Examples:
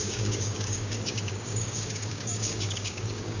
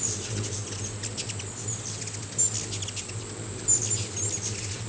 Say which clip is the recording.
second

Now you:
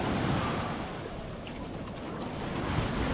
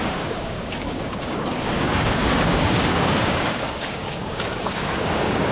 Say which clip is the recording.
first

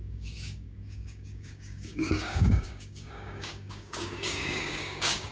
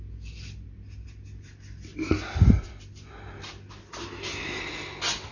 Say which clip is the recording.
second